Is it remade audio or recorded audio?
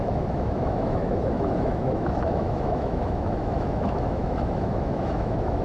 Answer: remade